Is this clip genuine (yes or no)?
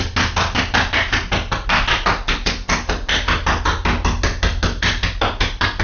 yes